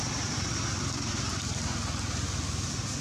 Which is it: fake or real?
real